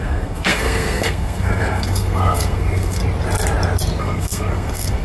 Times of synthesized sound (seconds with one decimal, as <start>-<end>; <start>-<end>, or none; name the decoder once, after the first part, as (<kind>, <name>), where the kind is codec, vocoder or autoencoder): 0.0-3.0 (codec, SNAC); 4.0-5.0